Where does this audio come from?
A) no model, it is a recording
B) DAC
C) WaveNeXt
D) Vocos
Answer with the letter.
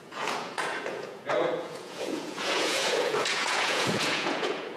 D